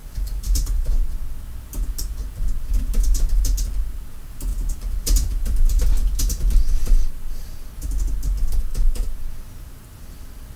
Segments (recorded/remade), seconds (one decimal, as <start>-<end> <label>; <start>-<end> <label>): 0.0-1.0 remade; 1.0-4.5 recorded; 4.5-5.8 remade; 5.8-6.8 recorded; 6.8-7.5 remade; 7.5-8.7 recorded; 8.7-9.3 remade; 9.3-10.6 recorded